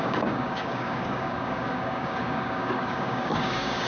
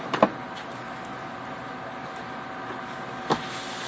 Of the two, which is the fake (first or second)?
first